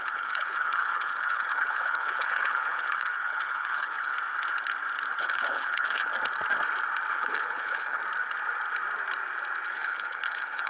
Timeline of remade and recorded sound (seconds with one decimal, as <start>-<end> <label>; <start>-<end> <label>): 0.0-4.1 remade; 4.1-5.2 recorded; 5.2-6.1 remade; 6.1-7.1 recorded; 7.1-8.0 remade; 8.0-9.7 recorded; 9.7-10.7 remade

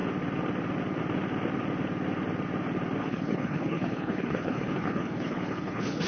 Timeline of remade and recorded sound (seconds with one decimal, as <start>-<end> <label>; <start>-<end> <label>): 0.0-3.0 recorded; 3.0-6.1 remade

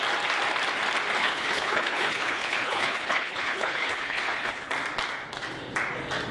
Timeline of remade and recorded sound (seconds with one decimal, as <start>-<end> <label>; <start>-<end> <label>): 0.0-1.2 recorded; 1.2-4.7 remade; 4.7-6.3 recorded

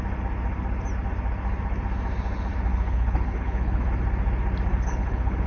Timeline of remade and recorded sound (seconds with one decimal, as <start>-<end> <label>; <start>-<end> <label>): 0.0-2.7 recorded; 2.7-3.9 remade; 3.9-4.7 recorded; 4.7-5.5 remade

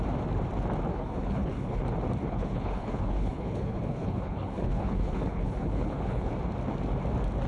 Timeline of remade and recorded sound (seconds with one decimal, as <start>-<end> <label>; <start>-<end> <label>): 0.0-0.9 recorded; 0.9-1.8 remade; 1.8-2.2 recorded; 2.2-6.3 remade; 6.3-7.5 recorded

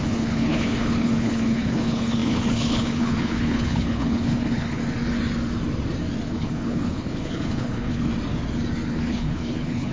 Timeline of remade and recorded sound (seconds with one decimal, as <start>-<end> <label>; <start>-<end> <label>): 0.0-4.8 remade; 4.8-6.3 recorded; 6.3-8.1 remade; 8.1-8.9 recorded; 8.9-9.9 remade